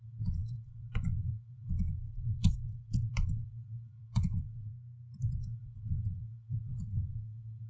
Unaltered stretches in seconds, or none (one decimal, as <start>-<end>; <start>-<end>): 4.7-5.4